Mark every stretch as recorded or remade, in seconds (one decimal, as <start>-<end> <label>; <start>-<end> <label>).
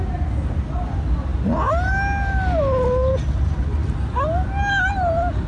0.0-5.5 recorded